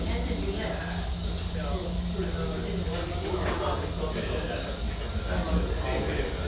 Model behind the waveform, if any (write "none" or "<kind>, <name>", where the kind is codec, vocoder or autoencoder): none